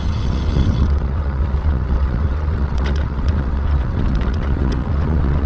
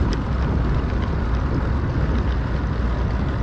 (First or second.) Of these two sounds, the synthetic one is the first